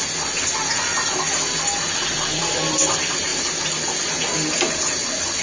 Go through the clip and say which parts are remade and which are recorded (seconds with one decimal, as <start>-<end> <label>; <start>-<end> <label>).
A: 0.0-5.4 recorded

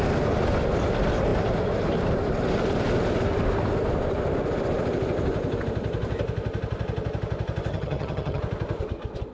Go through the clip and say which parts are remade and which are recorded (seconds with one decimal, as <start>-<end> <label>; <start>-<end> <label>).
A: 0.0-7.7 recorded; 7.7-8.4 remade; 8.4-9.3 recorded

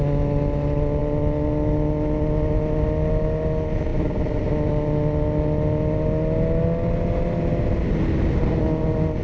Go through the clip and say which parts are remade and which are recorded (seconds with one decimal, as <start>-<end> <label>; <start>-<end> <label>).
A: 0.0-9.2 recorded